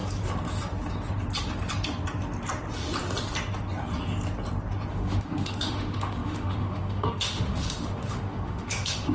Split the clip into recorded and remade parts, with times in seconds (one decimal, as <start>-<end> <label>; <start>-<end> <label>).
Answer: 0.0-4.9 recorded; 4.9-9.1 remade